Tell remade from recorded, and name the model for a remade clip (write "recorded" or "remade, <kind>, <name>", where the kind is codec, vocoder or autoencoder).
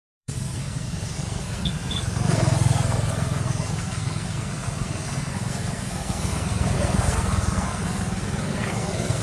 remade, codec, SNAC